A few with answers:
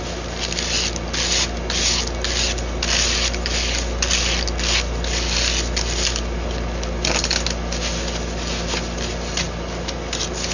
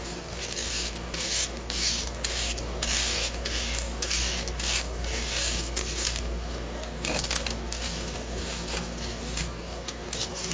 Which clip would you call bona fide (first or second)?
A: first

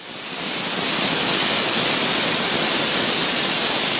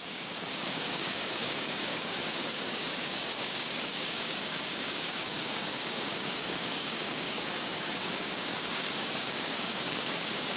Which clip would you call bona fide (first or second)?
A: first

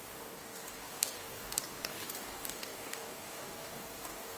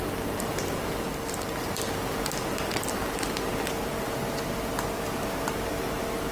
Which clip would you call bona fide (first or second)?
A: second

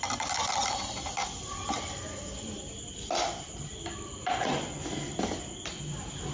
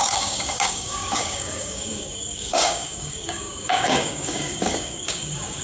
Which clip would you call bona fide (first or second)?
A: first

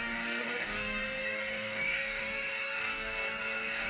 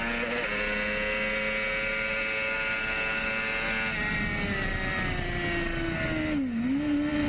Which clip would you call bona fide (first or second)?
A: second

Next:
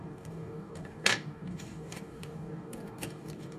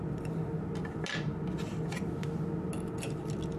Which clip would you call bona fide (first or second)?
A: second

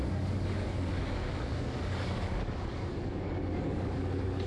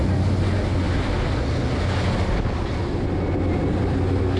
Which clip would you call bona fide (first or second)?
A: second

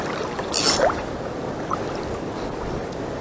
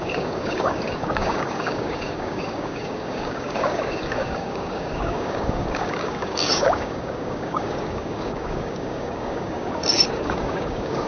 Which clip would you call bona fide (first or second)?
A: first